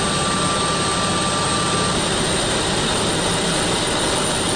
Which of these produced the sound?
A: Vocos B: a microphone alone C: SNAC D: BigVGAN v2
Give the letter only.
B